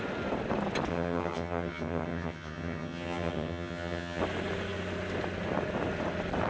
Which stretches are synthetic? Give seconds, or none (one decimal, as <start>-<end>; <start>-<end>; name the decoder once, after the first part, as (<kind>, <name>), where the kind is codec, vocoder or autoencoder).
0.9-4.2 (vocoder, HiFi-GAN)